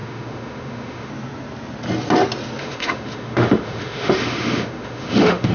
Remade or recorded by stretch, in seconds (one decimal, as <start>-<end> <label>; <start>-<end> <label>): 0.0-1.1 remade; 1.1-2.6 recorded; 2.6-5.5 remade